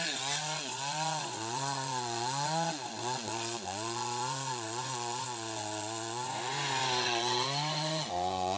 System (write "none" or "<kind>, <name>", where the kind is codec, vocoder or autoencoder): vocoder, Vocos